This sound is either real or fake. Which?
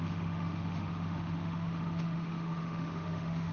fake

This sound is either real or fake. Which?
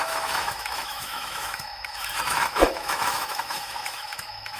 fake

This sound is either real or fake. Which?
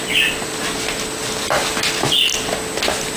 real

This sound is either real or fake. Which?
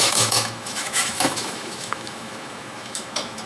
fake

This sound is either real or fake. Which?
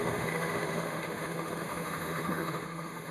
fake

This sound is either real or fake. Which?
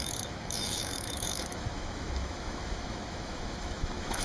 fake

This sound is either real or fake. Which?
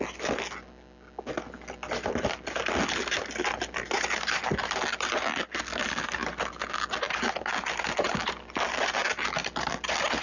real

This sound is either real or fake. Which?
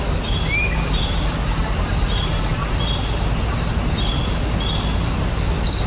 real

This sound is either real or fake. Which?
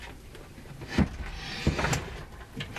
real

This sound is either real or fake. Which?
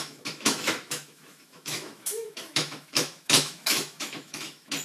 fake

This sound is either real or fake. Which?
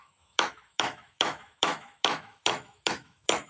fake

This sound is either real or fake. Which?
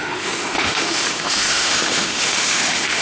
fake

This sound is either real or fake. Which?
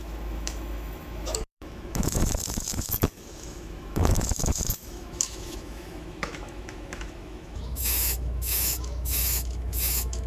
fake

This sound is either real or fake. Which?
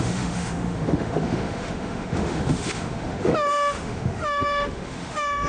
fake